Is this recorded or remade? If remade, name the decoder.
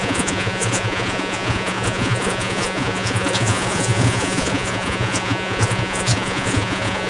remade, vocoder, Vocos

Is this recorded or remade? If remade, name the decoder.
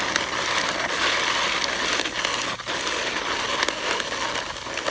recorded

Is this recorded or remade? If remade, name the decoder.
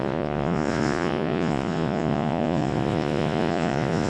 remade, vocoder, Vocos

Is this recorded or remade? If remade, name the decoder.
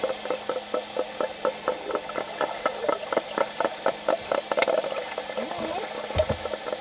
recorded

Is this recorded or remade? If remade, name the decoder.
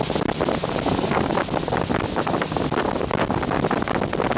recorded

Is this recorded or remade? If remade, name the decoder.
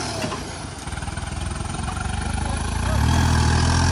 recorded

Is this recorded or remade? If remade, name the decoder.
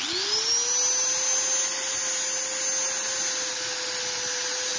recorded